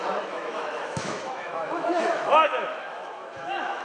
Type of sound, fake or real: fake